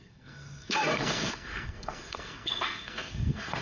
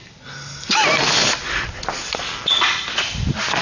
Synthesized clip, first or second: first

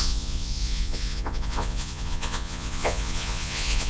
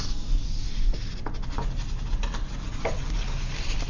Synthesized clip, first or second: first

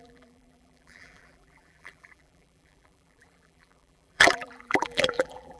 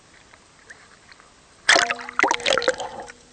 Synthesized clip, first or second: first